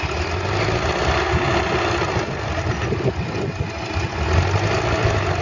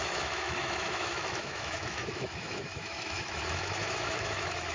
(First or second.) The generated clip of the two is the second